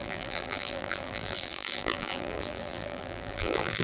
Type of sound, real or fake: fake